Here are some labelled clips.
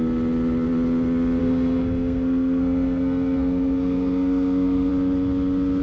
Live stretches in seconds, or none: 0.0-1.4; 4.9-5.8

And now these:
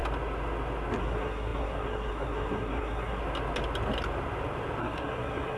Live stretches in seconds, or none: 0.0-1.0; 3.2-4.8

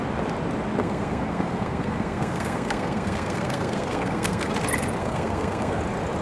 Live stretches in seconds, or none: 0.0-0.8; 4.5-5.0; 5.8-6.2

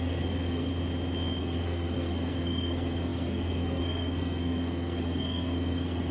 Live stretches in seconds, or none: 0.7-1.4

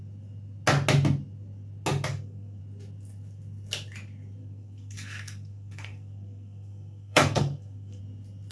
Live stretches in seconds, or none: 0.0-2.1; 2.6-4.4; 8.0-8.5

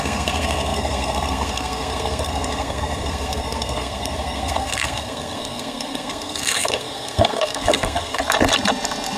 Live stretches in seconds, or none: 8.2-9.2

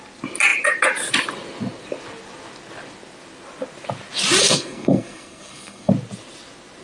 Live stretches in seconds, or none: 0.0-4.4; 5.9-6.8

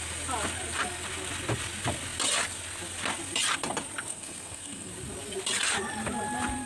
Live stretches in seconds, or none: 0.0-4.1; 4.9-6.7